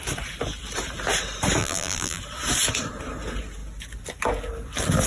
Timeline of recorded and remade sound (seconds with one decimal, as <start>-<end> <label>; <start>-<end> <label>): 0.0-1.6 recorded; 1.6-2.2 remade; 2.2-5.1 recorded